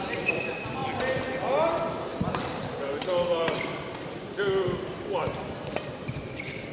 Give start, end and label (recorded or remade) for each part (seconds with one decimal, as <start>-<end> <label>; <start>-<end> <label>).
0.0-0.8 remade; 0.8-4.8 recorded; 4.8-6.7 remade